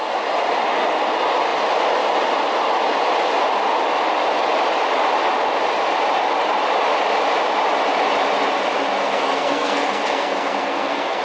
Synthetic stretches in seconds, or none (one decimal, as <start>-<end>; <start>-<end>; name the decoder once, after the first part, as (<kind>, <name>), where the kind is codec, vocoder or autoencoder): 9.0-11.2 (codec, SNAC)